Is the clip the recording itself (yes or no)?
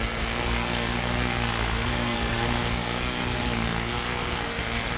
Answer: no